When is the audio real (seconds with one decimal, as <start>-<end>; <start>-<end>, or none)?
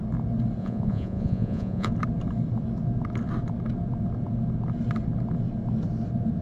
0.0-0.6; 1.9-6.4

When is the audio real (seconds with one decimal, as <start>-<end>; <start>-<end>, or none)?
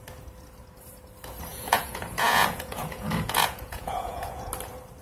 0.0-1.5; 4.5-5.0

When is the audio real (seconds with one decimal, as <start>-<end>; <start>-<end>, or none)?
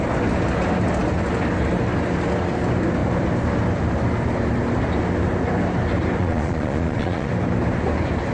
0.0-6.2; 7.3-8.3